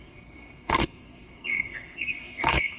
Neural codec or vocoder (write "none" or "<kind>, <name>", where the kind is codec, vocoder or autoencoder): codec, SNAC